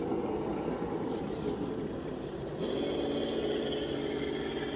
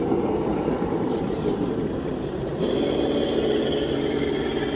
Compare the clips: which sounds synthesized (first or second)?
second